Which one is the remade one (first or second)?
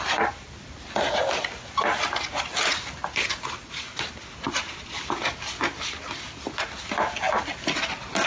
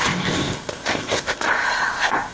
second